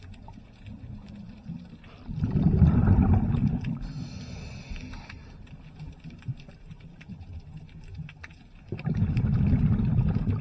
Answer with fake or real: real